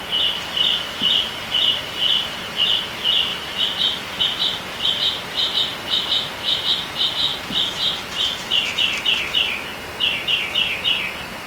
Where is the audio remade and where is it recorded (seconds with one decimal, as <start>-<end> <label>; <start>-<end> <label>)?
0.0-3.3 recorded; 3.3-4.2 remade; 4.2-11.5 recorded